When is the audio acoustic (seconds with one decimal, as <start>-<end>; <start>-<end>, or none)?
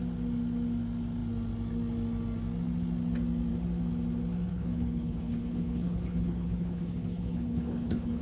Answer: 0.0-4.5